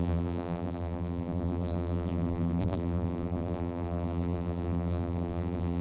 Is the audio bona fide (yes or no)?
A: no